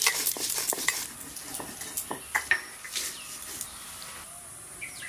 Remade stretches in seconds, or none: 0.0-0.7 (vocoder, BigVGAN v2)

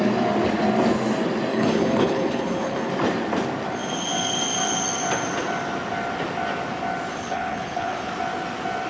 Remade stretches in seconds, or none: 1.5-2.9 (codec, HILCodec); 7.1-8.1

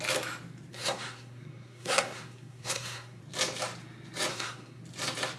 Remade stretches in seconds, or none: 0.7-3.2 (codec, SNAC); 4.3-4.8

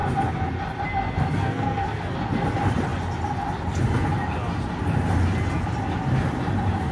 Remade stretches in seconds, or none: 1.4-2.1 (codec, SNAC)

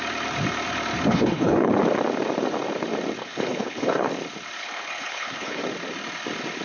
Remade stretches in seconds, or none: 1.1-1.7 (codec, HILCodec); 3.2-4.1; 4.6-5.6

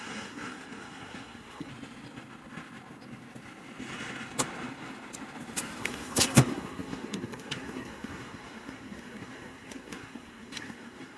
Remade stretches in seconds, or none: 0.0-1.7 (codec, SNAC); 5.8-11.2